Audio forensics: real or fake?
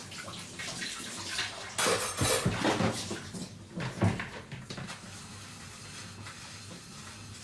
real